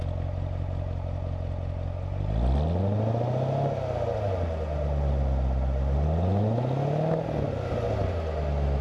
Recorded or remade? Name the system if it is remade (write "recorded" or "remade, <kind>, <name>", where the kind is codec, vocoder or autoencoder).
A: recorded